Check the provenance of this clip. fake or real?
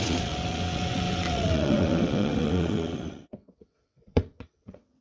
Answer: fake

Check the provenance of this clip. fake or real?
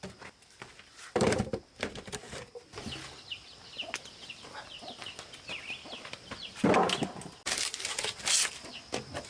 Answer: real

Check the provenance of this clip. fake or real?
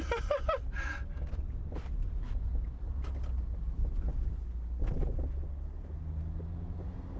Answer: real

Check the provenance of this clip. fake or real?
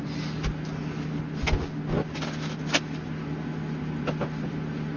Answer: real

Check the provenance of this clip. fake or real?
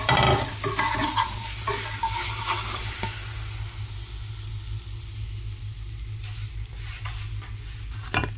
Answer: real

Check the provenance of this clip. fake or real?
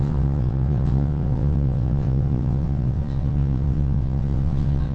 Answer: fake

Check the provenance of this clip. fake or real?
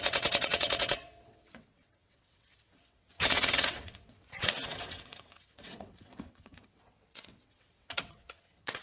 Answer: fake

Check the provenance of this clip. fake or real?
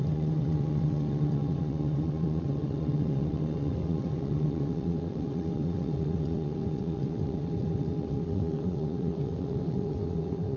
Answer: fake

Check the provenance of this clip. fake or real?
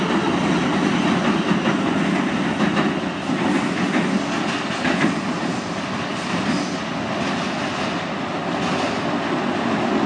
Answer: real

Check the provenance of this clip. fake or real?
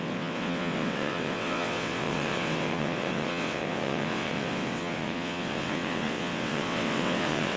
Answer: fake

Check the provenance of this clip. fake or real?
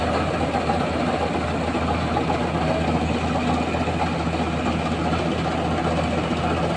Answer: real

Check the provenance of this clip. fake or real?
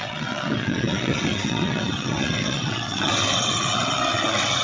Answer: fake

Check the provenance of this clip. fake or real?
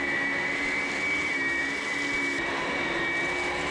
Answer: real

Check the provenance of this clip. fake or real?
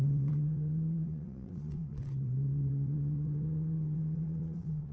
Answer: fake